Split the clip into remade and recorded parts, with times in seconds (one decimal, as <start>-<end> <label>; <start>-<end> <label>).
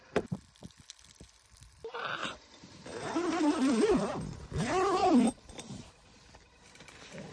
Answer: 0.0-2.2 remade; 2.2-3.3 recorded; 3.3-4.1 remade; 4.1-5.1 recorded; 5.1-7.3 remade